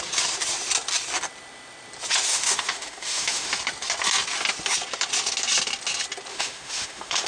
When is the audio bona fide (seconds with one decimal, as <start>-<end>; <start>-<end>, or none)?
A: 0.0-2.3; 3.5-6.3